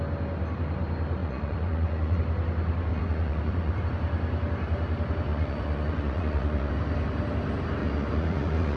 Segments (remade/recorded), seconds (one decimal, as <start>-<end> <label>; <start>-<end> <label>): 0.0-1.2 recorded; 1.2-2.2 remade; 2.2-2.9 recorded; 2.9-3.8 remade; 3.8-5.3 recorded; 5.3-6.7 remade; 6.7-7.8 recorded; 7.8-8.8 remade